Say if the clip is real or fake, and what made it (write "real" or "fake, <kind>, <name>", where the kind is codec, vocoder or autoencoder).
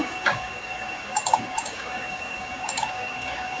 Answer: fake, codec, DAC